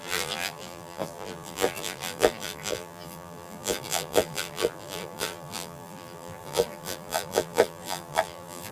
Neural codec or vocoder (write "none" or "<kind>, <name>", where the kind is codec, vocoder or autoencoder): vocoder, BigVGAN v2